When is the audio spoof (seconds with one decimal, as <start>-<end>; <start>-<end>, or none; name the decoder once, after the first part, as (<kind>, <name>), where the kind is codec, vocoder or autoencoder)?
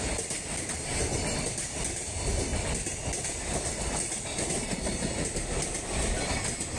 none